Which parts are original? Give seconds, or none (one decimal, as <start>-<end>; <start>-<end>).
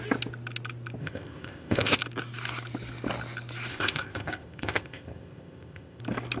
0.0-1.0; 2.0-3.7; 6.0-6.4